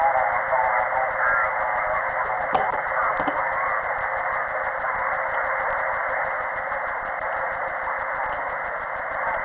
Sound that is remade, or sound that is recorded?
recorded